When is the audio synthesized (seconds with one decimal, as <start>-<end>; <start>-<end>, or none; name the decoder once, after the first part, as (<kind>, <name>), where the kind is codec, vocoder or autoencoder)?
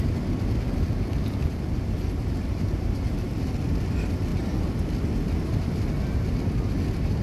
1.4-3.5 (vocoder, BigVGAN v2)